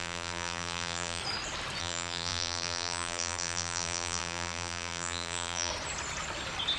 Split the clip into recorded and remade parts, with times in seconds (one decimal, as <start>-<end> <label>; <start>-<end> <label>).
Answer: 0.0-1.2 remade; 1.2-1.8 recorded; 1.8-5.7 remade; 5.7-6.8 recorded